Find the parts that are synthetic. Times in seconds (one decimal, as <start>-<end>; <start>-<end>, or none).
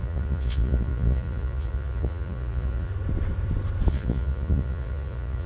0.0-2.9; 3.9-5.5